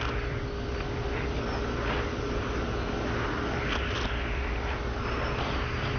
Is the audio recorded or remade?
recorded